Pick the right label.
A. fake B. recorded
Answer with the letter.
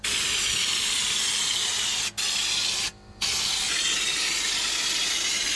B